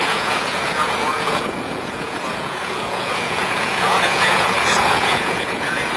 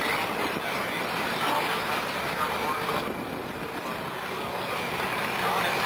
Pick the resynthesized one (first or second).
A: first